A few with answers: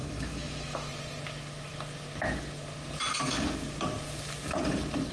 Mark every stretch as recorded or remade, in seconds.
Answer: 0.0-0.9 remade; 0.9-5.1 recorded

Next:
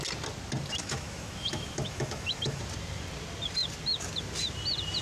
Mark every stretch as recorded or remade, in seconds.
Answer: 0.0-0.8 recorded; 0.8-2.6 remade; 2.6-5.0 recorded

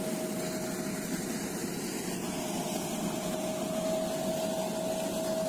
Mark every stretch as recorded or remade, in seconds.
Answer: 0.0-5.5 recorded

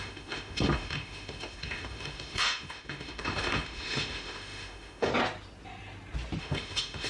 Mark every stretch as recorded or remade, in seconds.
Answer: 0.0-5.1 remade; 5.1-6.4 recorded; 6.4-7.1 remade

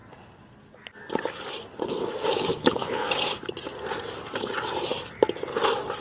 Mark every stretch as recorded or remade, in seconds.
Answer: 0.0-2.5 recorded; 2.5-3.1 remade; 3.1-6.0 recorded

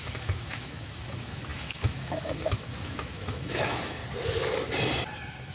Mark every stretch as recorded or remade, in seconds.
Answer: 0.0-4.0 remade; 4.0-5.5 recorded

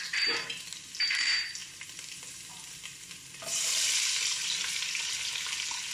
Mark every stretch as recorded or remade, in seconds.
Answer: 0.0-5.9 recorded

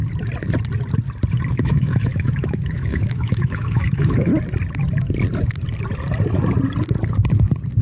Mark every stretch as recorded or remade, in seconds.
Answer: 0.0-1.5 recorded; 1.5-4.3 remade; 4.3-7.8 recorded